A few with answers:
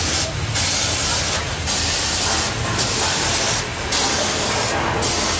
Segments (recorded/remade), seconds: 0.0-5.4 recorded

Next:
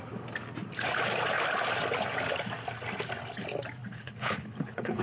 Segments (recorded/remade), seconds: 0.0-3.8 recorded; 3.8-5.0 remade